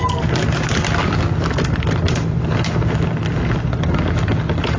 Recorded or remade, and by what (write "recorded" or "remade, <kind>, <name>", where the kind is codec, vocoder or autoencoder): recorded